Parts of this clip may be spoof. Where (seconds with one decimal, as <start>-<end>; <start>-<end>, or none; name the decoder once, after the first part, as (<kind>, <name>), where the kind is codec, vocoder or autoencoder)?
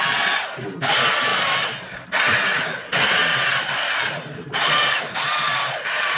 none